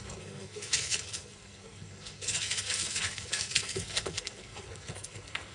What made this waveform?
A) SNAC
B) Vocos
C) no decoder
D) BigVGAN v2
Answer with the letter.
A